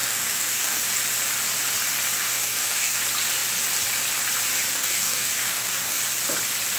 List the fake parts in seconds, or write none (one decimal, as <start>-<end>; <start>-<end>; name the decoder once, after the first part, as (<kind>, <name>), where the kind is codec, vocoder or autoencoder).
0.0-0.8 (codec, DAC); 2.2-3.0; 4.7-6.0